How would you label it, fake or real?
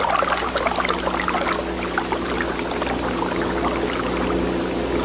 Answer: real